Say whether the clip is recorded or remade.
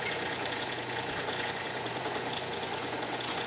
remade